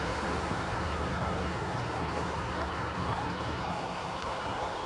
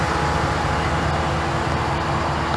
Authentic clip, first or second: second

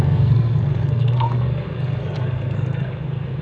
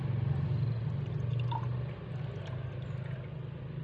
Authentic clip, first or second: second